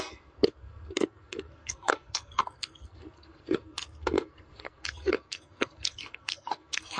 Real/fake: fake